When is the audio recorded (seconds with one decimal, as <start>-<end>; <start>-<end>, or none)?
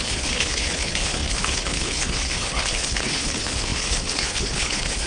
none